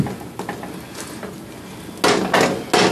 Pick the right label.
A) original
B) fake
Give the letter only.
A